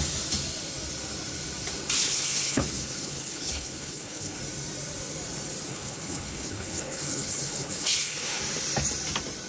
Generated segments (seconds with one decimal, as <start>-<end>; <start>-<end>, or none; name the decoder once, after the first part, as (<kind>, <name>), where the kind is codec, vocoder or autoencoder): 2.0-4.4 (codec, HILCodec); 5.7-8.4